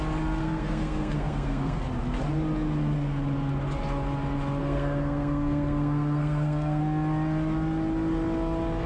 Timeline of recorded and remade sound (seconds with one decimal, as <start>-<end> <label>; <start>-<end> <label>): 0.0-0.4 recorded; 0.4-1.8 remade; 1.8-4.6 recorded; 4.6-6.8 remade; 6.8-8.9 recorded

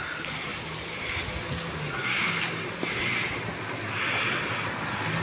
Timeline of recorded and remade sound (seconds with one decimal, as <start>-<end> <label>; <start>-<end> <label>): 0.0-5.2 recorded

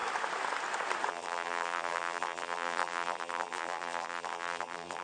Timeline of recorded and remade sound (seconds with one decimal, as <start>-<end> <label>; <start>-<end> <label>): 0.0-1.1 recorded; 1.1-5.0 remade

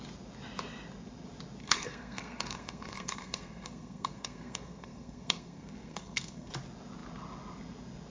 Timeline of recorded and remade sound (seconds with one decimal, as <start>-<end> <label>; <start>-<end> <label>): 0.0-1.6 recorded; 1.6-6.5 remade; 6.5-8.1 recorded

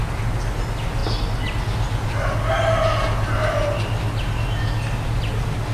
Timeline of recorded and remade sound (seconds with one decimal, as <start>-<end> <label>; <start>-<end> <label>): 0.0-5.7 recorded